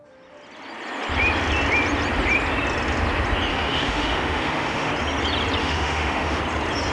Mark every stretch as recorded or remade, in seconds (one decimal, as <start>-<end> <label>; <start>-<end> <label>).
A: 0.0-3.5 recorded; 3.5-4.9 remade; 4.9-5.6 recorded; 5.6-6.4 remade; 6.4-6.9 recorded